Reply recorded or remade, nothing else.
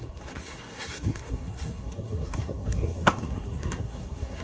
remade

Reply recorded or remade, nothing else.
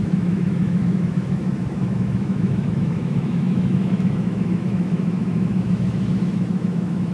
remade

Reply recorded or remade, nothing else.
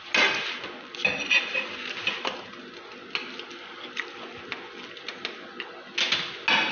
recorded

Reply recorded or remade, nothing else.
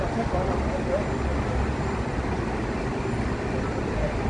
recorded